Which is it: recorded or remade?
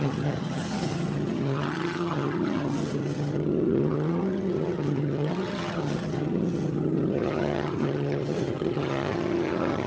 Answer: remade